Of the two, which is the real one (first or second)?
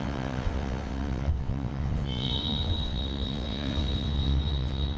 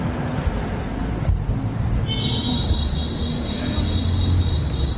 second